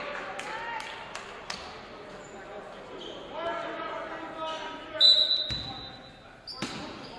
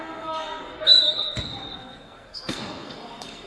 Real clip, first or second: first